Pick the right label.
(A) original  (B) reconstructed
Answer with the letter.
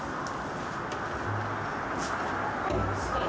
A